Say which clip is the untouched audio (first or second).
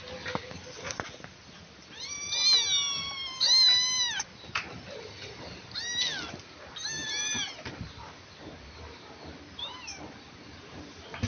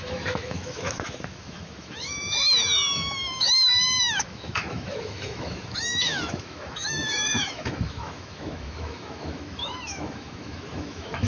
first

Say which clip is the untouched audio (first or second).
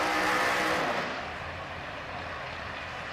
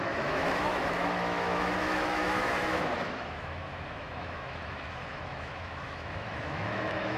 first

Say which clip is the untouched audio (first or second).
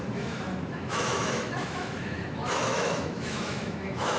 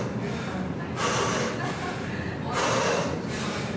second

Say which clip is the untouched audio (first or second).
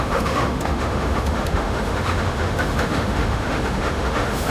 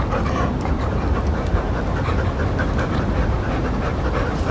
second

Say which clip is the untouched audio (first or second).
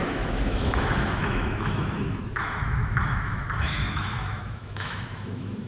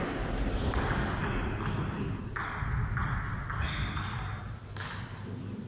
second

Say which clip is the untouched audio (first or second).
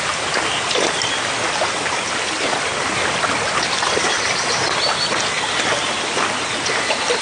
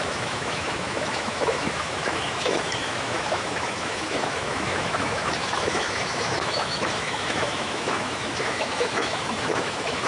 first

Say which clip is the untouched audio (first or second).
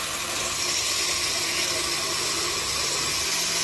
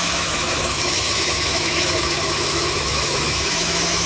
first